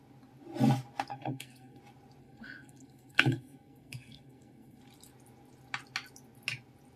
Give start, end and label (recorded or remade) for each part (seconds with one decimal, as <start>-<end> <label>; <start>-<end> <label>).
0.0-1.1 recorded; 1.1-1.8 remade; 1.8-2.2 recorded; 2.2-4.8 remade; 4.8-7.0 recorded